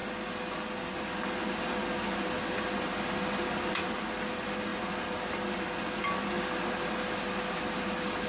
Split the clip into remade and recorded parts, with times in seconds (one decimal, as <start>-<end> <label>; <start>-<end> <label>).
0.0-8.3 recorded